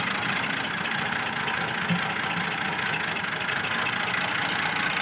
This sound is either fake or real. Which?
real